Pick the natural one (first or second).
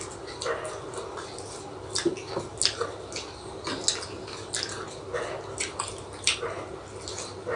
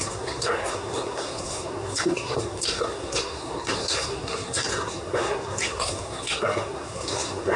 first